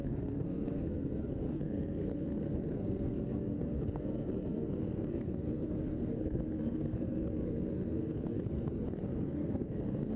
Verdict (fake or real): fake